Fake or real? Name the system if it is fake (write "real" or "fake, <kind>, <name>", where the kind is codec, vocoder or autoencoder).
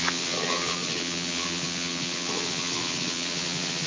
fake, vocoder, Vocos